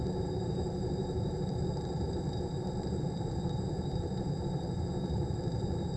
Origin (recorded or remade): remade